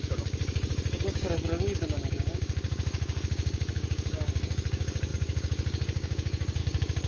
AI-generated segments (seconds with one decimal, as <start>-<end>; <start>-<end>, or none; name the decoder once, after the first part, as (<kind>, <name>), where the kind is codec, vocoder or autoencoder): 0.0-7.1 (codec, DAC)